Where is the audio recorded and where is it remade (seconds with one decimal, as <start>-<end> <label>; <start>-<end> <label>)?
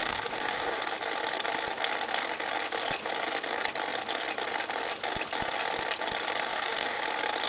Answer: 0.0-0.8 remade; 0.8-6.5 recorded; 6.5-7.0 remade; 7.0-7.5 recorded